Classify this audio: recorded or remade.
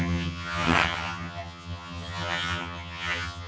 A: remade